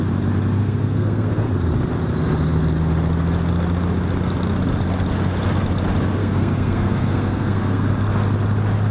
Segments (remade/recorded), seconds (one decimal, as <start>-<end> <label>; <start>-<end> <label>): 0.0-0.6 recorded; 0.6-1.5 remade; 1.5-6.2 recorded; 6.2-7.9 remade; 7.9-8.9 recorded